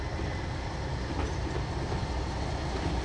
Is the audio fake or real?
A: real